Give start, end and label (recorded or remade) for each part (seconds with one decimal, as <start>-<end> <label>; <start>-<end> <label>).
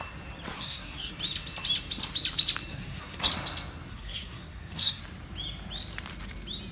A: 0.0-0.5 recorded; 0.5-1.1 remade; 1.1-2.7 recorded; 2.7-3.3 remade; 3.3-3.9 recorded; 3.9-5.0 remade; 5.0-6.7 recorded